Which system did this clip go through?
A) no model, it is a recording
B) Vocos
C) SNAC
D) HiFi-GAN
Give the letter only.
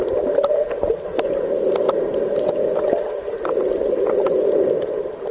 A